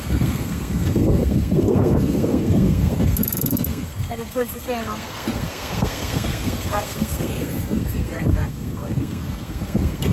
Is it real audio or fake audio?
fake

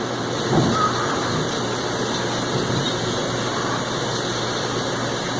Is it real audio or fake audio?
real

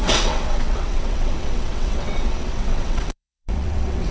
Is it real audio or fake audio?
fake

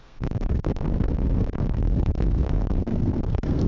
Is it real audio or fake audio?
fake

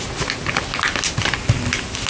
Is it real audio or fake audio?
real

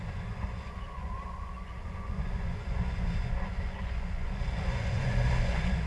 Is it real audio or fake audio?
fake